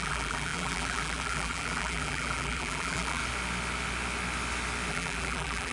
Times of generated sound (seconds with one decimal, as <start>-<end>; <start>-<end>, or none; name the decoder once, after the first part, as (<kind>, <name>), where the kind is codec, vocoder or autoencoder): 0.0-3.2 (vocoder, BigVGAN v2); 4.9-5.7